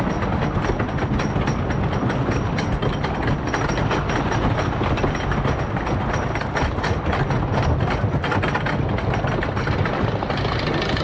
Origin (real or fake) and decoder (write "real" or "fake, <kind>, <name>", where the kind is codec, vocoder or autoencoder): real